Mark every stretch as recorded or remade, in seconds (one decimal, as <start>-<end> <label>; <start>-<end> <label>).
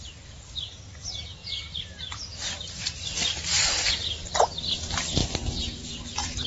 0.0-1.4 recorded; 1.4-4.6 remade; 4.6-6.5 recorded